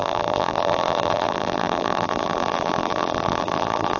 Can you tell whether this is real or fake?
fake